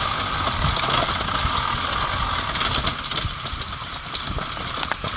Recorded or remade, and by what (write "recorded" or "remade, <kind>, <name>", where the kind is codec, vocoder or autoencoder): recorded